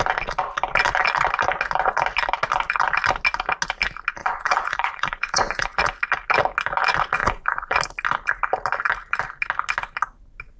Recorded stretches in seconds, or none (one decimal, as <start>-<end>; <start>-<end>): 0.0-4.2; 5.8-7.2; 7.8-10.6